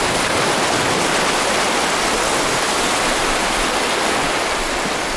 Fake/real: real